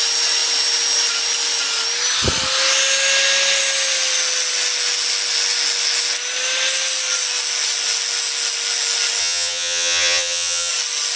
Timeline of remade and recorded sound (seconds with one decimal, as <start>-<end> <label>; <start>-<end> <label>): 0.0-9.2 recorded; 9.2-10.7 remade; 10.7-11.2 recorded